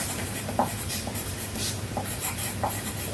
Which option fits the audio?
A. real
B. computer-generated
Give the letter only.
B